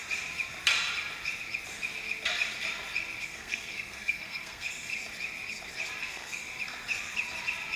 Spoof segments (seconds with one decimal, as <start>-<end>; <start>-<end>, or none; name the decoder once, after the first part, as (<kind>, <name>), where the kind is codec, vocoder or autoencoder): 3.2-4.9 (codec, SNAC); 6.0-6.4